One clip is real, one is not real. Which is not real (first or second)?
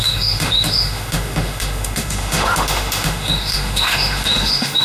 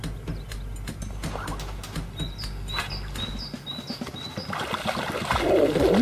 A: first